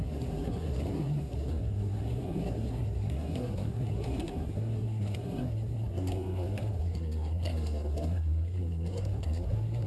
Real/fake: fake